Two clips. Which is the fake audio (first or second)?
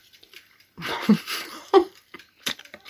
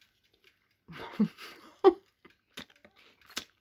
first